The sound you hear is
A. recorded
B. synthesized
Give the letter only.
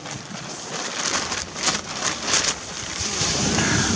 A